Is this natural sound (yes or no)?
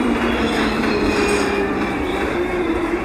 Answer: no